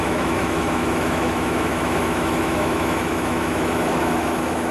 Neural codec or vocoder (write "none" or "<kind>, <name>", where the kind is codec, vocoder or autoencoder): autoencoder, DAC-VAE